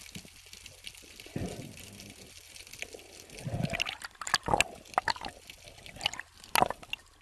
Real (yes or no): yes